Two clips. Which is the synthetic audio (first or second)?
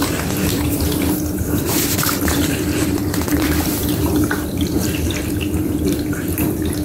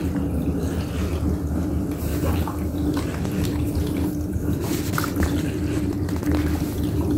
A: first